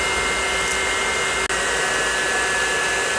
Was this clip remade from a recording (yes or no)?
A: no